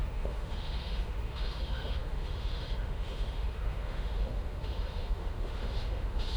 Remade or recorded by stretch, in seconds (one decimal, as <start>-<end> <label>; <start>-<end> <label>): 0.0-6.4 remade